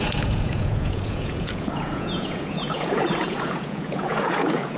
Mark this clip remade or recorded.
remade